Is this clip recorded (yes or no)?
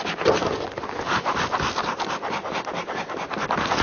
yes